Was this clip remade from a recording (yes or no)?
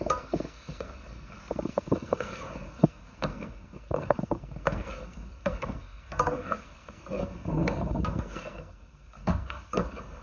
yes